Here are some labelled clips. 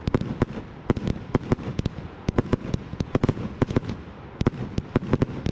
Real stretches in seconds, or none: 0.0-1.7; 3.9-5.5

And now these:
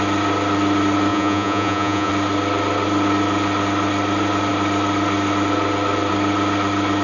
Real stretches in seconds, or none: 0.0-1.1; 2.1-7.0

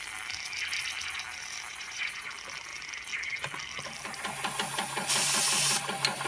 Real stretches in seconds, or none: 0.0-1.7; 2.3-6.3

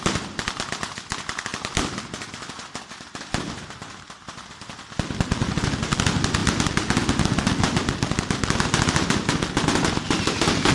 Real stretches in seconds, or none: 0.0-10.7

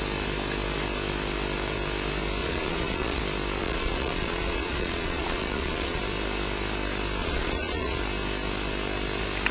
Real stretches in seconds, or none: 0.0-2.4; 3.2-3.6; 6.0-7.2; 8.0-9.5

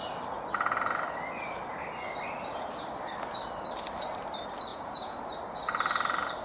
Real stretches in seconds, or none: 0.0-4.7; 5.2-6.4